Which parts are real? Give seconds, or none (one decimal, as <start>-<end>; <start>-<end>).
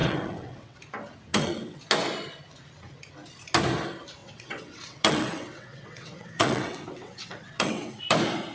0.8-1.3; 1.8-4.2; 8.0-8.5